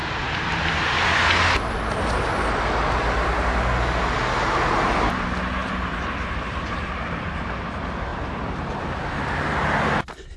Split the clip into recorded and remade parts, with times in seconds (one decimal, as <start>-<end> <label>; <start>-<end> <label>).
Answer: 0.0-0.7 remade; 0.7-5.6 recorded; 5.6-7.7 remade; 7.7-8.1 recorded; 8.1-8.7 remade; 8.7-10.4 recorded